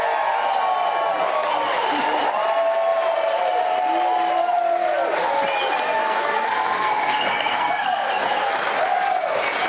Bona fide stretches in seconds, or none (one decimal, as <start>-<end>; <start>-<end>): 0.0-6.0; 8.5-9.7